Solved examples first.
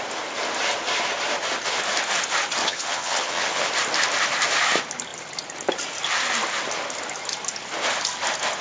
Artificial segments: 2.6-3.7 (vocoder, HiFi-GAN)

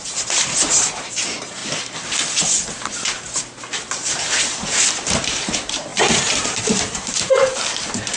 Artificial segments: 0.0-1.6 (vocoder, BigVGAN v2); 3.9-8.2

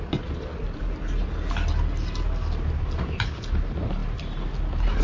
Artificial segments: none

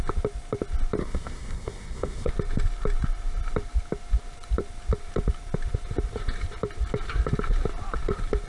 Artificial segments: 1.0-2.3 (codec, SNAC)

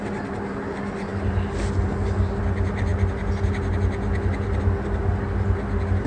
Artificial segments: none

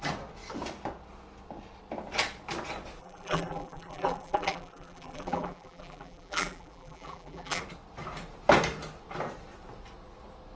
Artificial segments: 3.0-7.6 (vocoder, BigVGAN v2)

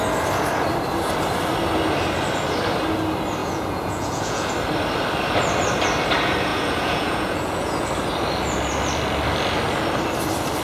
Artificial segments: 3.4-4.5 (vocoder, Vocos); 6.5-7.9